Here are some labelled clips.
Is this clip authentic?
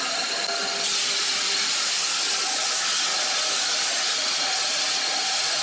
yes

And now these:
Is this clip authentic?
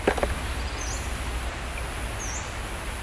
yes